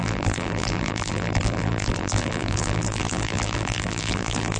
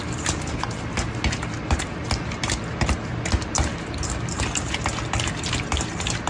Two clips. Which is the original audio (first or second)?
second